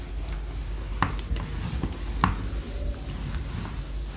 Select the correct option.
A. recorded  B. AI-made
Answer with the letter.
A